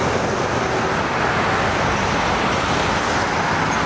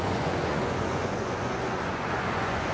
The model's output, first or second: second